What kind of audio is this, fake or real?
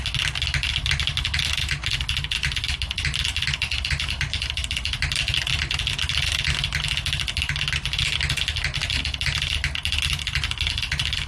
real